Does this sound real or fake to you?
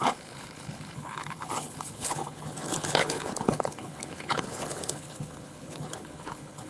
fake